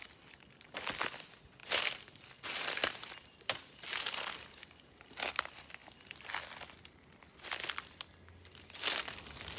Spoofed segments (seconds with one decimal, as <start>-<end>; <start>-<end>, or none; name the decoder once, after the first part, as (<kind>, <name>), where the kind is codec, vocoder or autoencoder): none